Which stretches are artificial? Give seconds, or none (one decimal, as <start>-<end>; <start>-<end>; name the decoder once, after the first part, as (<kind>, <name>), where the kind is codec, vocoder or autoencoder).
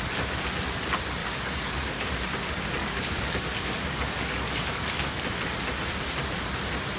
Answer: 1.2-2.1 (codec, DAC); 2.8-5.2